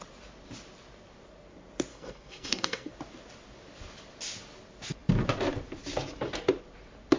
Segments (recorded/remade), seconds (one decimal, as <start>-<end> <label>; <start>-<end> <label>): 0.0-1.9 recorded; 1.9-2.9 remade; 2.9-7.2 recorded